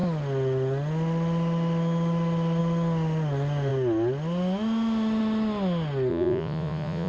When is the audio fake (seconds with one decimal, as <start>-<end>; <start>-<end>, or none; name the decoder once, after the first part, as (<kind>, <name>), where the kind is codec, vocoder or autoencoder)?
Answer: 6.1-7.1 (vocoder, Vocos)